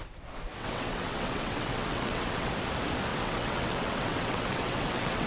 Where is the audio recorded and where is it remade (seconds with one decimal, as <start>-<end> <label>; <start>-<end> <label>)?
0.0-0.5 recorded; 0.5-2.5 remade; 2.5-3.1 recorded; 3.1-5.3 remade